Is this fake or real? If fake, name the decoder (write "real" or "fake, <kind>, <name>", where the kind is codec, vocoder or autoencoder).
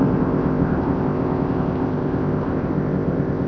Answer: fake, codec, ZipCodec